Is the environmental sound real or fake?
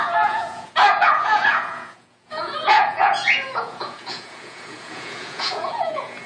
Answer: fake